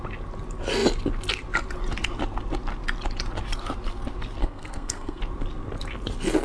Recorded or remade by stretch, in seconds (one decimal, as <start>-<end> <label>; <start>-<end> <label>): 0.0-4.4 recorded; 4.4-5.2 remade; 5.2-6.4 recorded